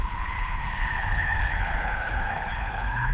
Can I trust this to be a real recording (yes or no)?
no